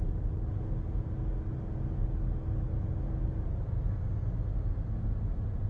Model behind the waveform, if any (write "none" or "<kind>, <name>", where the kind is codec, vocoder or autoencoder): none